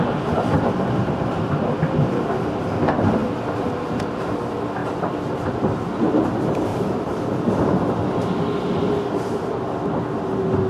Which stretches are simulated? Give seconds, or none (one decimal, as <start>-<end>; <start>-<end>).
4.8-5.6; 6.7-7.5